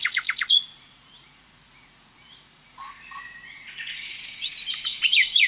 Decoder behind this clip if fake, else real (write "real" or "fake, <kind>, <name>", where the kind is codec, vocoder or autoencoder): fake, vocoder, Vocos